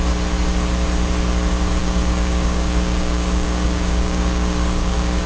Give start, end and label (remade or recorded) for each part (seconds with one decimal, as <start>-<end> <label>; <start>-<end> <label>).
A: 0.0-1.8 recorded; 1.8-5.3 remade